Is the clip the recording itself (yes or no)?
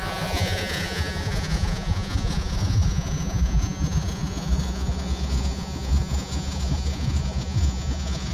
no